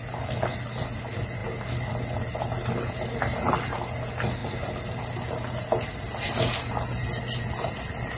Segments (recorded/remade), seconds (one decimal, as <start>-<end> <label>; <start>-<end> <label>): 0.0-8.2 recorded